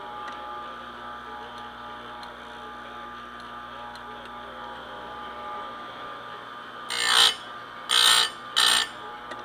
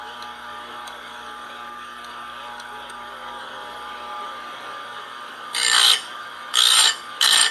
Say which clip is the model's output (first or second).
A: second